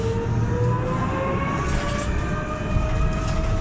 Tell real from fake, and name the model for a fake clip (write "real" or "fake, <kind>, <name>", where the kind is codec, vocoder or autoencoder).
real